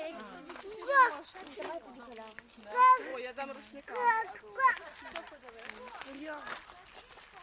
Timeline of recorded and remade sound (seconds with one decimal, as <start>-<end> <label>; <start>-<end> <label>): 0.0-1.1 remade; 1.1-7.4 recorded